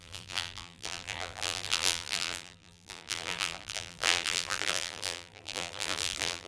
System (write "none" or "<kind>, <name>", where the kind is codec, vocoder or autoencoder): vocoder, BigVGAN v2